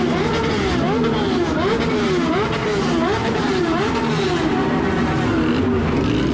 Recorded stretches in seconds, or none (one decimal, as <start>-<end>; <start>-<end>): 0.0-3.2; 4.5-6.3